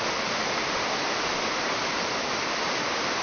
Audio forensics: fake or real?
real